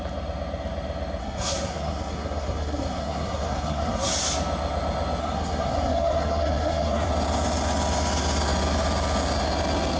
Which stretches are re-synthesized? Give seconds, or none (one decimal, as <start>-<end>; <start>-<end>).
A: 1.2-4.1; 5.2-7.1